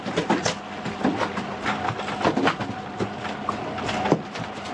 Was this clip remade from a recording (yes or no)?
no